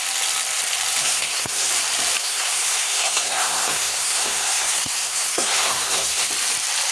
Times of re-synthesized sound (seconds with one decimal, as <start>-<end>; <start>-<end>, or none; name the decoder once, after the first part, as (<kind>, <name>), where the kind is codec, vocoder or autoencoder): 1.0-1.7 (codec, SNAC); 2.2-6.3